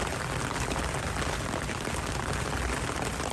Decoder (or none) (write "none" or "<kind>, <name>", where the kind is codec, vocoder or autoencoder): none